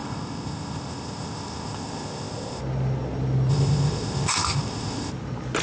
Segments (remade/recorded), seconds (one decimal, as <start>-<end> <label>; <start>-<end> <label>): 0.0-2.6 remade; 2.6-3.5 recorded; 3.5-5.1 remade; 5.1-5.6 recorded